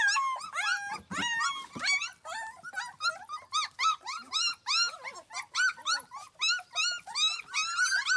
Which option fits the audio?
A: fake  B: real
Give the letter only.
B